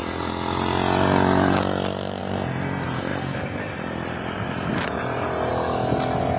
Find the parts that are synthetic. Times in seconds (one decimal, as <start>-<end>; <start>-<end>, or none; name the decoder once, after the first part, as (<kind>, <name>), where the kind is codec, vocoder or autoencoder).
3.1-5.5 (vocoder, BigVGAN v2)